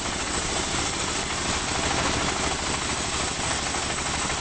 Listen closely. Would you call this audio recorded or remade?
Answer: recorded